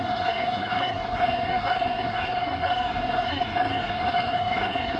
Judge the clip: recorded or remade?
remade